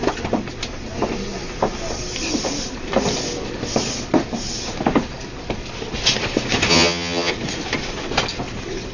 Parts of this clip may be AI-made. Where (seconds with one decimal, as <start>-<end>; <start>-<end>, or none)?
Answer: 6.7-7.3